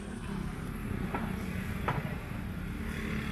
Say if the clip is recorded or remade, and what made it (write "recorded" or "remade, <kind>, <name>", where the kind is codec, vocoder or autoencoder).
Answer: recorded